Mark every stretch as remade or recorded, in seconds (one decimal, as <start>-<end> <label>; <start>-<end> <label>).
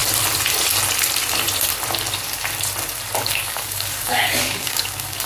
0.0-3.2 recorded; 3.2-5.3 remade